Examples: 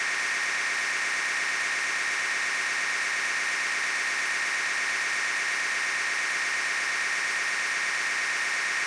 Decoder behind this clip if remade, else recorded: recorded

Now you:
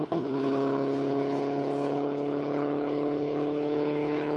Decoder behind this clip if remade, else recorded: remade, codec, HILCodec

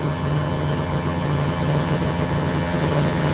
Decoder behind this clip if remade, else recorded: remade, vocoder, HiFi-GAN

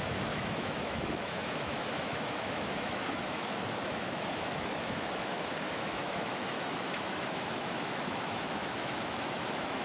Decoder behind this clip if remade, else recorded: remade, autoencoder, DAC-VAE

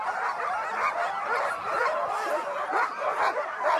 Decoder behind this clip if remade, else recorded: recorded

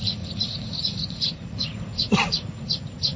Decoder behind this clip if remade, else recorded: remade, vocoder, Vocos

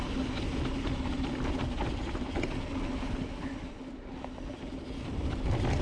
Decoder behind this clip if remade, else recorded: recorded